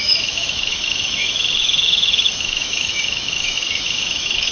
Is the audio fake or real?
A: fake